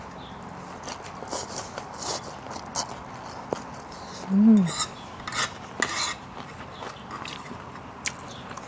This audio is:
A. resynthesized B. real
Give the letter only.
B